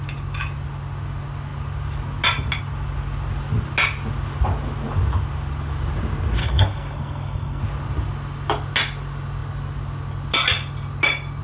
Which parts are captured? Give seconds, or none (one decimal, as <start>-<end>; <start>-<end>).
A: 0.0-6.4; 7.6-11.4